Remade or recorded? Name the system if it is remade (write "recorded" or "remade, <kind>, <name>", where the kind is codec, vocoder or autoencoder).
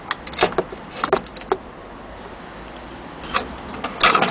recorded